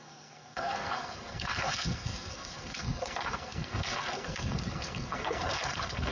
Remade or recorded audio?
remade